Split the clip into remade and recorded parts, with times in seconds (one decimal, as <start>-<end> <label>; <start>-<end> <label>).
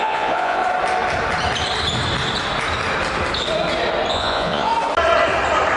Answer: 0.0-0.6 remade; 0.6-4.1 recorded; 4.1-4.7 remade; 4.7-5.8 recorded